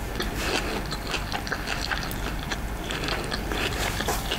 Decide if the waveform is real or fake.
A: real